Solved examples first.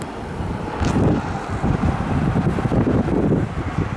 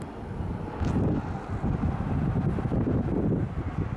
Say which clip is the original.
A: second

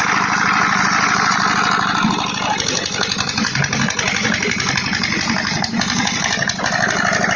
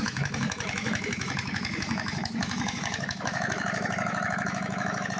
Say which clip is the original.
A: first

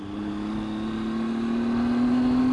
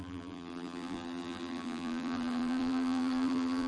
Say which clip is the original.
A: first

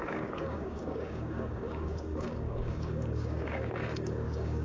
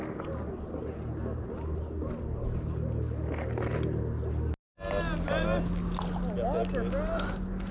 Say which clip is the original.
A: second